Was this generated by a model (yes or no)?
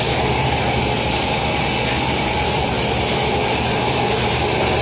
no